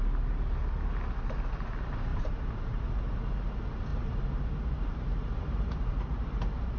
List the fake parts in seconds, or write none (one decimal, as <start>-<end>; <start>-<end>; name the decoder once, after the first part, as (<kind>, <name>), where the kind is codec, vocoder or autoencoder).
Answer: 2.1-2.8 (vocoder, BigVGAN v2); 3.9-6.3